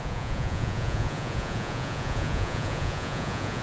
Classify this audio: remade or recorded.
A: remade